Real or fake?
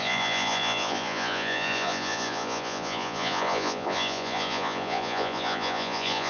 fake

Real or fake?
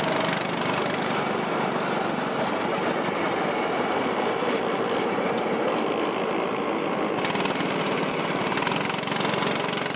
real